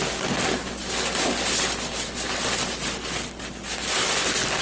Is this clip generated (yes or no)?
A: no